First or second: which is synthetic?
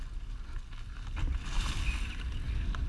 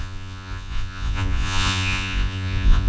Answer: second